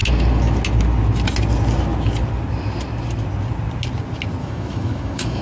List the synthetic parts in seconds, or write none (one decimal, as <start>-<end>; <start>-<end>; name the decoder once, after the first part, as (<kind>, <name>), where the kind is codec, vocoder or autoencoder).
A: 4.4-5.4 (autoencoder, DAC-VAE)